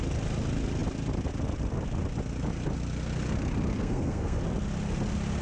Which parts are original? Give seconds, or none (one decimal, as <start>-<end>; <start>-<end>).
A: 0.0-3.8; 4.4-5.4